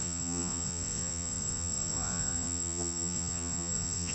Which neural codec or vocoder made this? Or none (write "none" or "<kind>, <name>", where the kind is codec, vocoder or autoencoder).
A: vocoder, Vocos